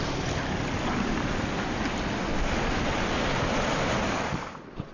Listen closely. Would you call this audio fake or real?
real